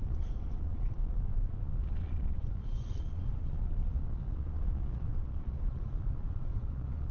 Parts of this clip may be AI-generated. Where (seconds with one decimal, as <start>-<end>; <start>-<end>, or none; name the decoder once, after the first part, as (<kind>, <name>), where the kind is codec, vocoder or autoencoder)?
0.0-7.1 (vocoder, Vocos)